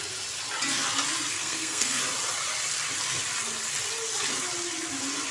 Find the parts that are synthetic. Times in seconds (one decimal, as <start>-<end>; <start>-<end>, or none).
1.3-2.0